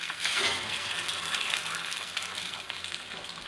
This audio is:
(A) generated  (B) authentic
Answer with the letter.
A